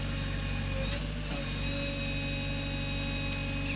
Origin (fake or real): real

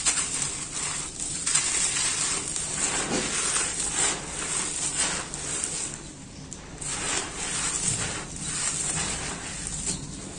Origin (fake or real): real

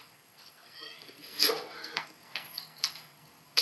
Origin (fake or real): fake